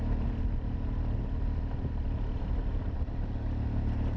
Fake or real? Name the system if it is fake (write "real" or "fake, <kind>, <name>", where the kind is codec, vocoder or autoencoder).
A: real